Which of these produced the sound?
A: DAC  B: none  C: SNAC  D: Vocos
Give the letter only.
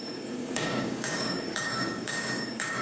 A